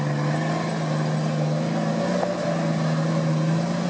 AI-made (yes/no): no